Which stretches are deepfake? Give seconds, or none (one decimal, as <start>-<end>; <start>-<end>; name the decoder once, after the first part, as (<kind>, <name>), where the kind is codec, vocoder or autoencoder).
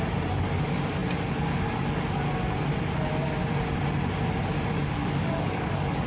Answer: 5.0-6.1 (codec, DAC)